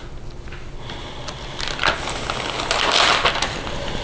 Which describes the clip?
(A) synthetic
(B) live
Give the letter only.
B